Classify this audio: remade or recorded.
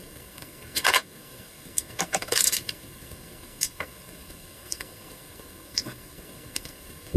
remade